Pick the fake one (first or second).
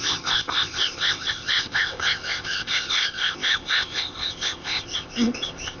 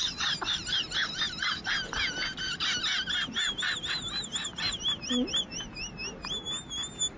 first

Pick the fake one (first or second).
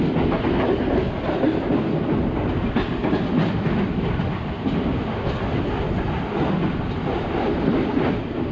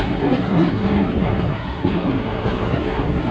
second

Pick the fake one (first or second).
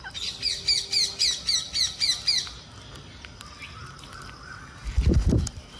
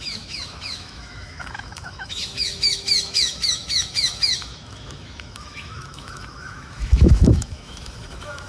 second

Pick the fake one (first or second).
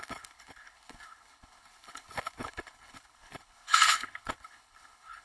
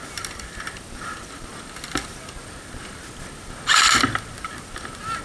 first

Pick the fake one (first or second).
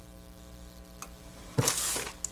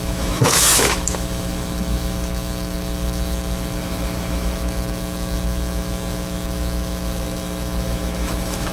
second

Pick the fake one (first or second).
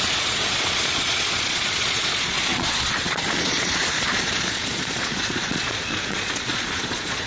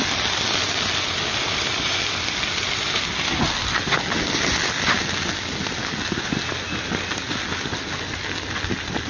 first